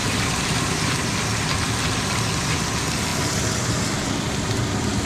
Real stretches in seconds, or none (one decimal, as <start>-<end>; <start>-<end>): 1.7-5.1